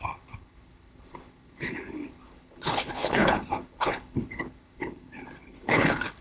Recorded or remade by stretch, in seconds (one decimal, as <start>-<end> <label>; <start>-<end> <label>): 0.0-6.2 remade